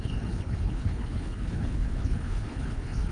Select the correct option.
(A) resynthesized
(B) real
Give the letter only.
A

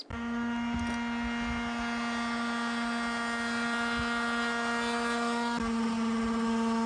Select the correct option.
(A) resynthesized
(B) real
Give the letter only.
B